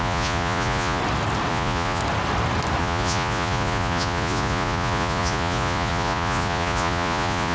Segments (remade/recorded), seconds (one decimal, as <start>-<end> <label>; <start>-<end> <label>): 0.0-1.0 remade; 1.0-1.5 recorded; 1.5-2.0 remade; 2.0-2.8 recorded; 2.8-7.5 remade

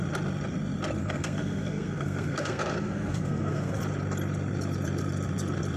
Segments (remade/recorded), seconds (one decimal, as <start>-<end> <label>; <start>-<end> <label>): 0.0-1.0 recorded; 1.0-3.8 remade; 3.8-5.8 recorded

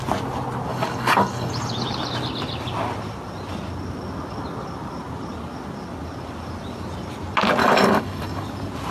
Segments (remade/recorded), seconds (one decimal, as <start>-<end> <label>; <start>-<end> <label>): 0.0-0.7 recorded; 0.7-1.5 remade; 1.5-7.6 recorded; 7.6-8.5 remade; 8.5-8.9 recorded

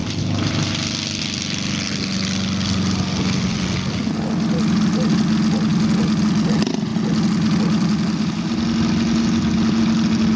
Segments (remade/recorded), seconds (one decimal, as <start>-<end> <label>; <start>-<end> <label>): 0.0-10.4 recorded

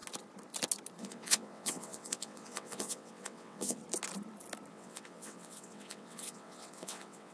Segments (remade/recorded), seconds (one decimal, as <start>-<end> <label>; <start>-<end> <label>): 0.0-1.0 recorded; 1.0-3.8 remade; 3.8-4.7 recorded; 4.7-7.3 remade